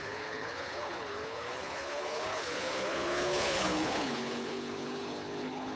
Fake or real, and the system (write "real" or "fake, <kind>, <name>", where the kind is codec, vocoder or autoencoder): fake, codec, HILCodec